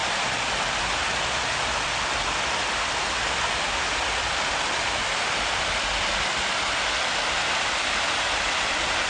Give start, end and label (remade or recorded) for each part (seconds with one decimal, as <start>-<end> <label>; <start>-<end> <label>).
0.0-9.1 recorded